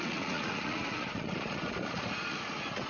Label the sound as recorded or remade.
remade